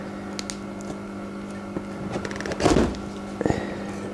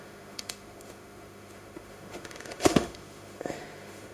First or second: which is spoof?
second